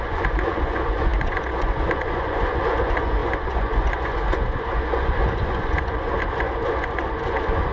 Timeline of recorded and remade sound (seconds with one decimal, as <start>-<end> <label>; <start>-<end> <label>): 0.0-7.7 remade